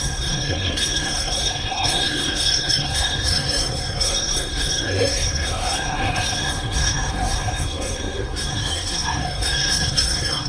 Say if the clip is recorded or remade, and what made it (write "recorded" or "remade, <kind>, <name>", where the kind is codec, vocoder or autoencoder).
remade, codec, SNAC